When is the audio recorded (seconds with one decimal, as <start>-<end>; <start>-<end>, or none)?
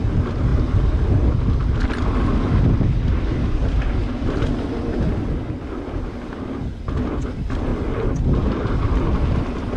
0.0-9.8